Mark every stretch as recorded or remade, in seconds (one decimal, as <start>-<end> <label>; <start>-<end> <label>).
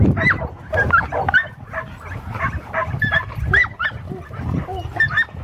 0.0-3.6 recorded; 3.6-4.6 remade; 4.6-5.4 recorded